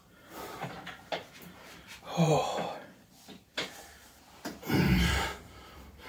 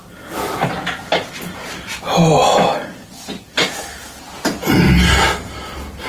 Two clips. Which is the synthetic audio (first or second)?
first